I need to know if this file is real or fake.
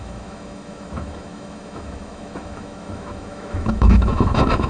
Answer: fake